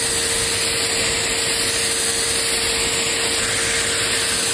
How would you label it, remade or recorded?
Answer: recorded